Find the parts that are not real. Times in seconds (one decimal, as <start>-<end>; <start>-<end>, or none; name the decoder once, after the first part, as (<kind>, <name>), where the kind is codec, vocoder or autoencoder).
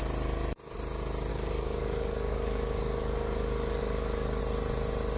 1.3-4.4 (codec, DAC)